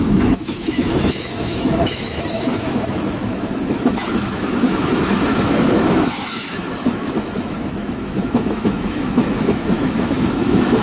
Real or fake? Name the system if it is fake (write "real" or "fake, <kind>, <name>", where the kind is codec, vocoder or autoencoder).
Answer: fake, autoencoder, DAC-VAE